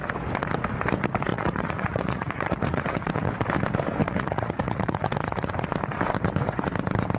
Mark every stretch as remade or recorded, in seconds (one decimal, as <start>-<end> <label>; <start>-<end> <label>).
0.0-1.3 recorded; 1.3-3.3 remade; 3.3-4.0 recorded; 4.0-5.5 remade; 5.5-7.2 recorded